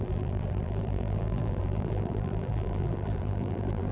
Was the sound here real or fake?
fake